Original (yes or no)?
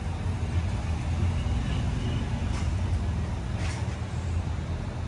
yes